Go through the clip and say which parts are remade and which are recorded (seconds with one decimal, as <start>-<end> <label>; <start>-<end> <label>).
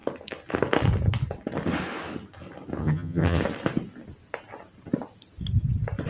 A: 0.0-2.8 recorded; 2.8-3.4 remade; 3.4-6.1 recorded